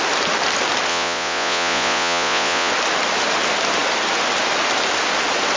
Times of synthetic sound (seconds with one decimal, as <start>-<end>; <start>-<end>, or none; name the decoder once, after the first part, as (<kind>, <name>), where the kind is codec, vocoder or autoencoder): 0.9-2.7 (vocoder, Vocos)